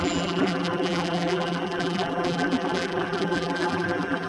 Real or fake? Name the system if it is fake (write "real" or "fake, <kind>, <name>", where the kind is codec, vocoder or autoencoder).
fake, vocoder, BigVGAN v2